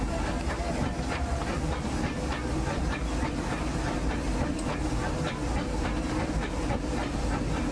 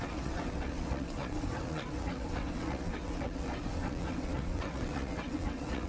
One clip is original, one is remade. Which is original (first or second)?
first